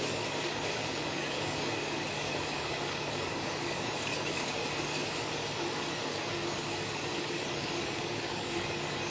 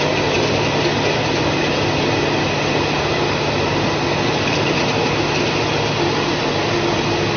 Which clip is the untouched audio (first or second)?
second